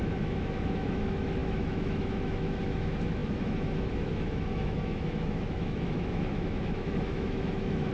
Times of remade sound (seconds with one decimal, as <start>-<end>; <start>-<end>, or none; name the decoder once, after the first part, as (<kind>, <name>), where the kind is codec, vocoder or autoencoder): 0.0-7.9 (autoencoder, DAC-VAE)